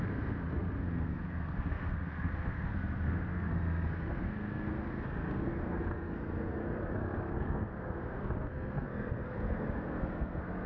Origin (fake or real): fake